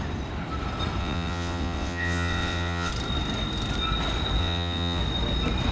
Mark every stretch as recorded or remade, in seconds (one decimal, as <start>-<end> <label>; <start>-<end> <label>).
0.0-1.0 recorded; 1.0-2.9 remade; 2.9-4.4 recorded; 4.4-5.0 remade; 5.0-5.7 recorded